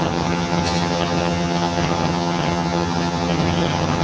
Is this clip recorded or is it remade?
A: remade